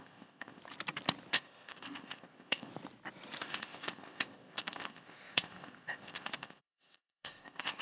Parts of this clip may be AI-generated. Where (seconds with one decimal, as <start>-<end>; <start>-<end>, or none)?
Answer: 0.0-0.6; 1.3-2.7; 3.4-7.8